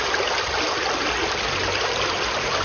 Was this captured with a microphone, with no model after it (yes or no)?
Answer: yes